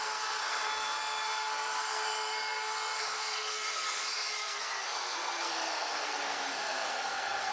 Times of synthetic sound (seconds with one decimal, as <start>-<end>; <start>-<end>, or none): 0.0-7.5